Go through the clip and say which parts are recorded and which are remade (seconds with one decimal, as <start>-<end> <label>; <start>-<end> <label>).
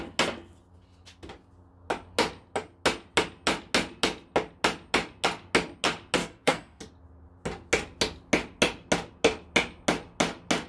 0.0-6.2 recorded; 6.2-6.8 remade; 6.8-10.7 recorded